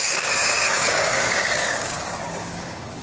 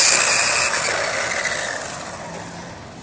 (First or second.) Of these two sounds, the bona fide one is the second